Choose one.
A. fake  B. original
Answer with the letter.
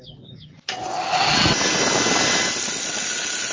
B